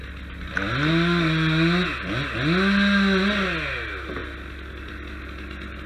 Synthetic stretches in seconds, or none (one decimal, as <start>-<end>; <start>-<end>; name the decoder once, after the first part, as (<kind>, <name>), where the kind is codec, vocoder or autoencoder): none